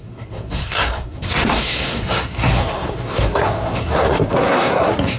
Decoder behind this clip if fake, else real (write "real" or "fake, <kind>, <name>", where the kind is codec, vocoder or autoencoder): fake, codec, SNAC